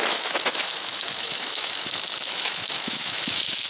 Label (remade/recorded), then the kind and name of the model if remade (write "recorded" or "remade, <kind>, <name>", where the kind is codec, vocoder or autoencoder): remade, autoencoder, DAC-VAE